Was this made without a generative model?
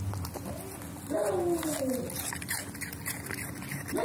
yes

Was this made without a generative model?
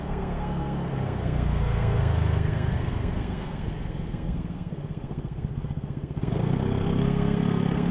no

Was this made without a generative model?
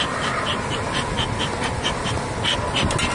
yes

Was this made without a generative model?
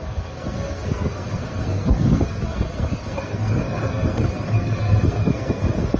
no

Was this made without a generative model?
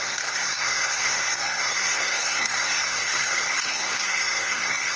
no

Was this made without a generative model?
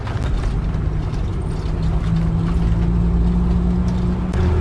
yes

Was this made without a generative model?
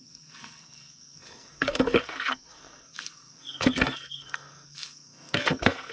no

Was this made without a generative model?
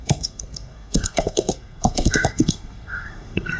no